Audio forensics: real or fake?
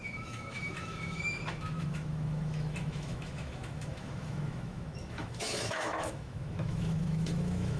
fake